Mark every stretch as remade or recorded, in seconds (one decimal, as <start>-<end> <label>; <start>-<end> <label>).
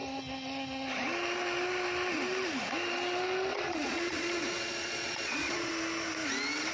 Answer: 0.0-3.5 recorded; 3.5-5.7 remade; 5.7-6.7 recorded